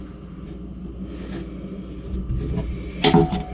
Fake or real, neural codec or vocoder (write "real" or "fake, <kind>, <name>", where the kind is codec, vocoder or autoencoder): real